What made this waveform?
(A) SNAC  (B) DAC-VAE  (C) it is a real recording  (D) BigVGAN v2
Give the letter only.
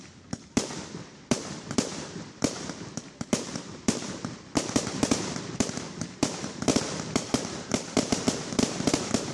D